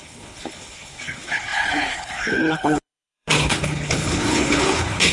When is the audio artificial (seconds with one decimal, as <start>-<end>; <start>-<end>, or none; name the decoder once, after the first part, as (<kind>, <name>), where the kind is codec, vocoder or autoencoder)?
0.0-5.1 (codec, HILCodec)